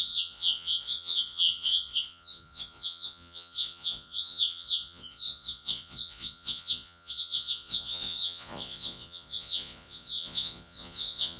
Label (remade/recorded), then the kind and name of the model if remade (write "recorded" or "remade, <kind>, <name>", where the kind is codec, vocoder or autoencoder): remade, vocoder, Vocos